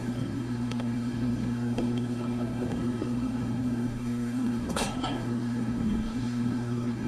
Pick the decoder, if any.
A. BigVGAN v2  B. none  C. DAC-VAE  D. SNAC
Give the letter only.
D